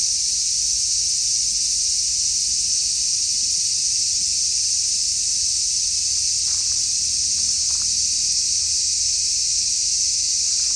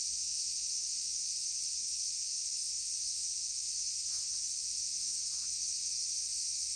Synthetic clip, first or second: second